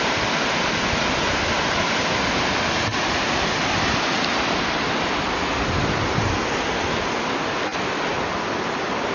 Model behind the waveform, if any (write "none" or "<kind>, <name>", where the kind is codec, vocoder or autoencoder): none